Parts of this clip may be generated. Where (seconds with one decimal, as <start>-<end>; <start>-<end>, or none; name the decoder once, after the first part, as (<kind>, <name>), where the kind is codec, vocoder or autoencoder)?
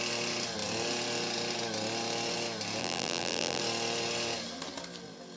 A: 2.8-3.6 (vocoder, BigVGAN v2)